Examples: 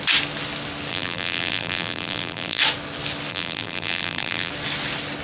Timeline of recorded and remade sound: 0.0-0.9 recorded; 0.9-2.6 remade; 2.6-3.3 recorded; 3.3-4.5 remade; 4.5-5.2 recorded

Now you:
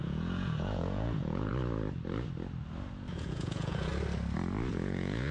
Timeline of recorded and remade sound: 0.0-1.5 remade; 1.5-3.1 recorded; 3.1-3.9 remade; 3.9-4.7 recorded; 4.7-5.3 remade